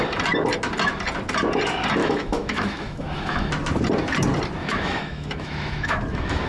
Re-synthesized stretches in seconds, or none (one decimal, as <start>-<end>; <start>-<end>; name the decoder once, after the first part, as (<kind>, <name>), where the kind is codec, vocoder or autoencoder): 2.0-3.5 (autoencoder, DAC-VAE); 4.6-6.5